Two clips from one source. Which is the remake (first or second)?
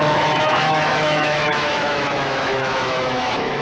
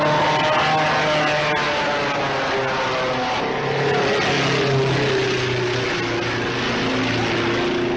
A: first